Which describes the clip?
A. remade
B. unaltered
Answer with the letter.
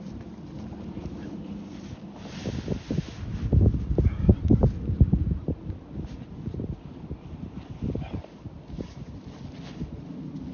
B